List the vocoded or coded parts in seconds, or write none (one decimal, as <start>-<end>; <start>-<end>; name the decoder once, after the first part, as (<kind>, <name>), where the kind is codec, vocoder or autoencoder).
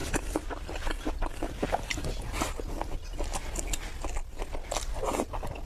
0.0-1.9 (vocoder, BigVGAN v2); 3.9-4.9